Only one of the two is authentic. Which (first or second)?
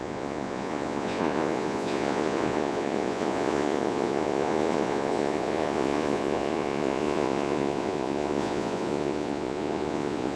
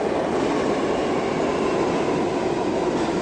second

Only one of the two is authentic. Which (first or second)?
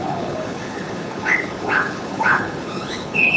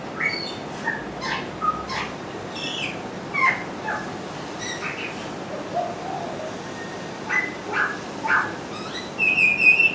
second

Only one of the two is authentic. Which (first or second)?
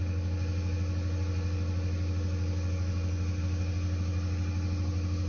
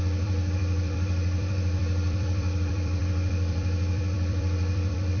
first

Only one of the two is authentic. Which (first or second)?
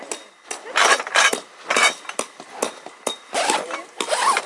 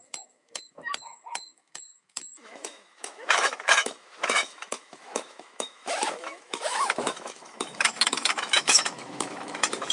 first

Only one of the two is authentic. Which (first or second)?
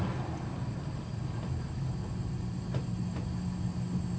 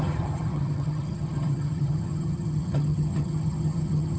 first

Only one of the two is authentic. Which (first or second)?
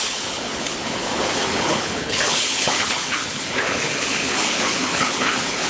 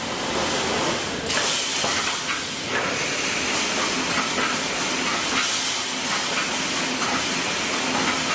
second